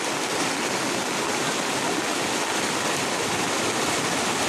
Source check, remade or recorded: recorded